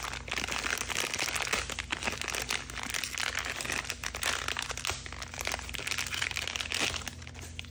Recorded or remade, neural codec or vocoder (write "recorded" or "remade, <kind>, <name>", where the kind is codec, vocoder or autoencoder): recorded